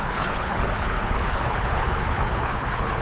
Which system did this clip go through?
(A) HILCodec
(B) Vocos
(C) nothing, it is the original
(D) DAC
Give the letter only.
A